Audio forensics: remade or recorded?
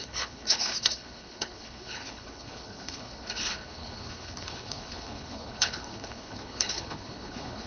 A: remade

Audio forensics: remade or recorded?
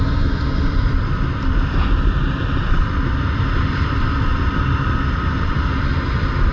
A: recorded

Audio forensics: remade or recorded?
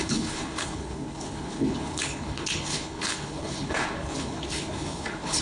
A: remade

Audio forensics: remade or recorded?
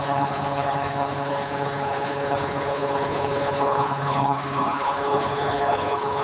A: remade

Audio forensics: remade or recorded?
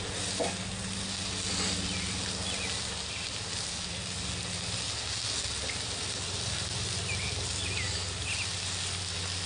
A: recorded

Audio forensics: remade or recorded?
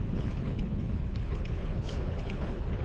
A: remade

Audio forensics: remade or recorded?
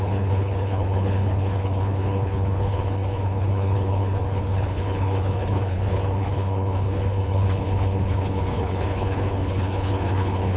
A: remade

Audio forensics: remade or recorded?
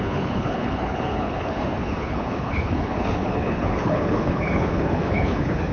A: remade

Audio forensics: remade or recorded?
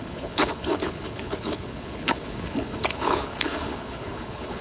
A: remade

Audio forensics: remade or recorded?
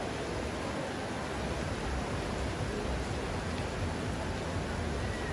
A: recorded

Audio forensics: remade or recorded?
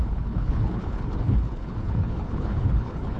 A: remade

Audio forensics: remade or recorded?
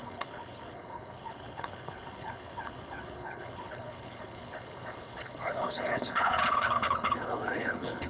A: remade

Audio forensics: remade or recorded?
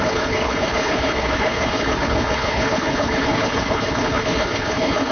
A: remade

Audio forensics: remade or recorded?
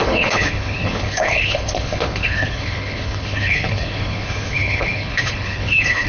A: remade